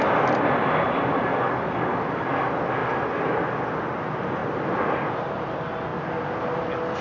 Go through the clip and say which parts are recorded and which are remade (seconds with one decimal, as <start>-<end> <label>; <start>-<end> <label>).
0.0-7.0 recorded